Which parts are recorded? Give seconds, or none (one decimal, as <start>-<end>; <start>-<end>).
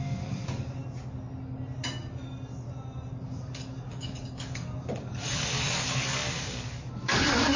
0.8-3.3